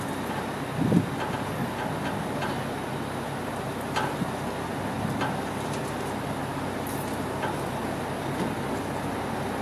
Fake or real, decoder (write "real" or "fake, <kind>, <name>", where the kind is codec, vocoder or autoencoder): real